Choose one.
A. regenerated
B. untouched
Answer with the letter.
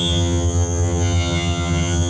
A